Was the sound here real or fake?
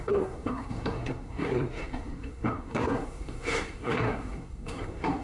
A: fake